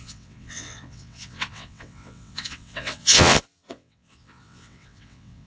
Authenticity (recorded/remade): remade